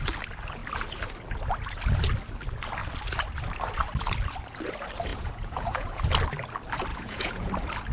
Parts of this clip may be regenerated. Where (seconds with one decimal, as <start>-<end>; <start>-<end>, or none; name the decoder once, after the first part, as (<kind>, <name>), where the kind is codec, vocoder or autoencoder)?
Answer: 5.1-6.0 (vocoder, Vocos); 6.9-7.5